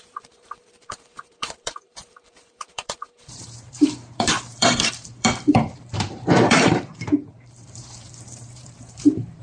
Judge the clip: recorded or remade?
remade